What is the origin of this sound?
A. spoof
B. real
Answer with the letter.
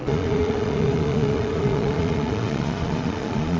A